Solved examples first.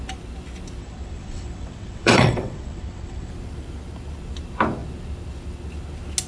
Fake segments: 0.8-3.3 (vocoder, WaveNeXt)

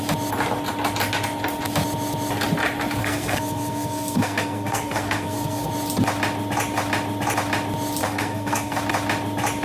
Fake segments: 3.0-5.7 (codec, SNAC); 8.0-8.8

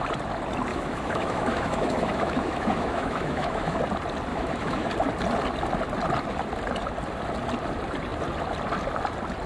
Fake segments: 0.7-3.8 (autoencoder, DAC-VAE); 4.3-4.9

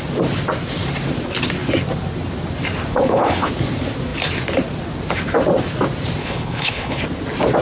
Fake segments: 2.9-3.5 (codec, HILCodec); 6.2-7.0

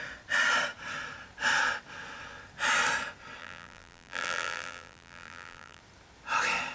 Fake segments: 3.4-5.8 (vocoder, BigVGAN v2)

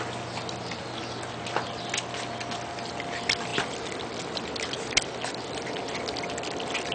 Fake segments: none